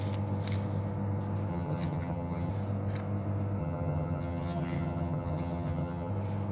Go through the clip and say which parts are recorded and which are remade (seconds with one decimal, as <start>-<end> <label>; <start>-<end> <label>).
0.0-1.5 recorded; 1.5-2.5 remade; 2.5-3.6 recorded; 3.6-6.1 remade; 6.1-6.5 recorded